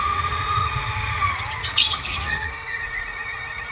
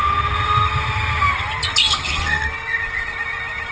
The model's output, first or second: first